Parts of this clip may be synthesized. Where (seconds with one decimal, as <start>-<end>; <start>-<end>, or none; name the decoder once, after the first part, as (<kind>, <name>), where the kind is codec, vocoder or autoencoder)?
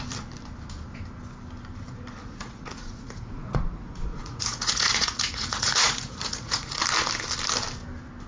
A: 2.2-6.8 (vocoder, Vocos)